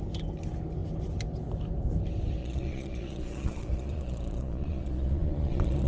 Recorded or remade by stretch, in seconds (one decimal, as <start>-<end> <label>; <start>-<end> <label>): 0.0-2.4 recorded; 2.4-5.9 remade